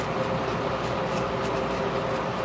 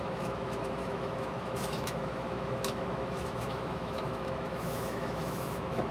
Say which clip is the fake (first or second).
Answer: second